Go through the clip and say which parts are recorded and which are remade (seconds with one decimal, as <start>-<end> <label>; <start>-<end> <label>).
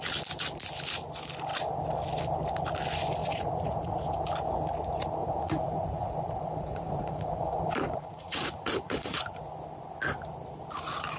0.0-3.2 recorded; 3.2-4.0 remade; 4.0-5.2 recorded; 5.2-9.4 remade; 9.4-11.2 recorded